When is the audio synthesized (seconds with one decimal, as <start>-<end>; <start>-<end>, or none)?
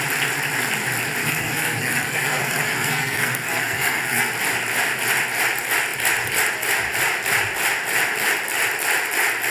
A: 1.2-4.3